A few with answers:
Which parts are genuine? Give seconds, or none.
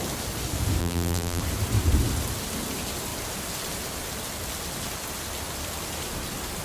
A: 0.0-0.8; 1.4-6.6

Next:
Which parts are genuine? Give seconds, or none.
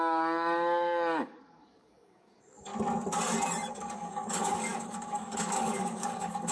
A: 2.7-3.7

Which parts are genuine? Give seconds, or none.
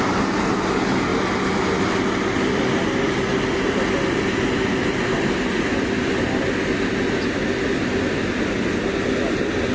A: 0.0-9.7